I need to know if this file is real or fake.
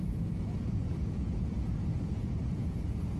fake